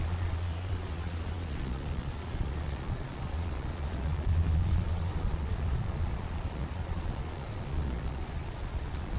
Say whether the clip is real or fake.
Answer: fake